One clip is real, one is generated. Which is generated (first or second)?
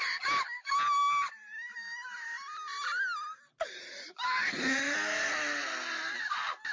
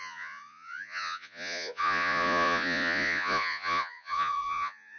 second